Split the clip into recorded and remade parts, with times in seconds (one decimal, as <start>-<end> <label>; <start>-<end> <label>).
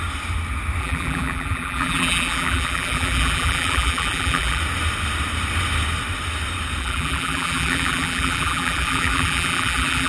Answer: 0.0-0.8 recorded; 0.8-4.6 remade; 4.6-6.8 recorded; 6.8-10.1 remade